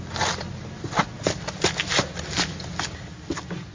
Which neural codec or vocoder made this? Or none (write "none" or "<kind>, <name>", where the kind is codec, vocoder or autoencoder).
none